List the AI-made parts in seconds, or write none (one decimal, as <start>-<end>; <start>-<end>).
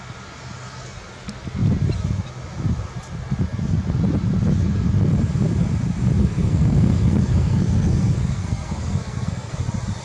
6.2-9.6